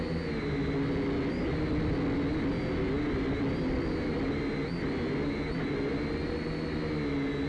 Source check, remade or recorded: recorded